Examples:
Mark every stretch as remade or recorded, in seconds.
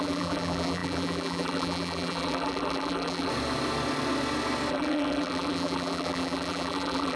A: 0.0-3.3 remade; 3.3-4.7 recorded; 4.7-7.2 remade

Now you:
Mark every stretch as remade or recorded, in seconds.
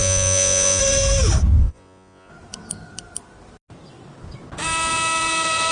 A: 0.0-0.8 remade; 0.8-1.6 recorded; 1.6-2.3 remade; 2.3-5.7 recorded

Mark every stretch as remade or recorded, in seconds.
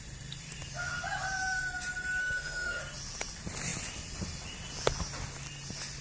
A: 0.0-2.2 recorded; 2.2-2.8 remade; 2.8-6.0 recorded